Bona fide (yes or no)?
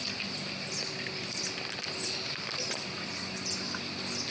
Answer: yes